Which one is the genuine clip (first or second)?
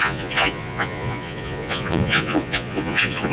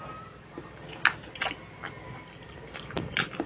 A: second